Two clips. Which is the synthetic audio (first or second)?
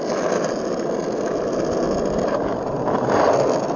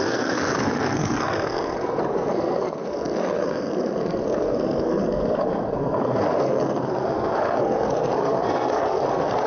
second